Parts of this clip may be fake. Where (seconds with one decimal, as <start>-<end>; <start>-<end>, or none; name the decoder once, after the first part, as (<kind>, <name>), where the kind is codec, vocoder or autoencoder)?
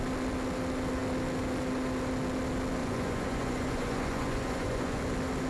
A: 2.8-5.0 (vocoder, Vocos)